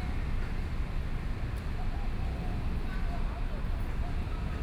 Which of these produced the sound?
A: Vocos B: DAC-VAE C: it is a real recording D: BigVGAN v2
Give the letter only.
C